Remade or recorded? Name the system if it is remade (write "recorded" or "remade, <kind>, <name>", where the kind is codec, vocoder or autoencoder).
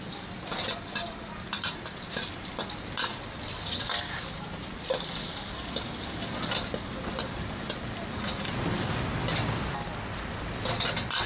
remade, vocoder, BigVGAN v2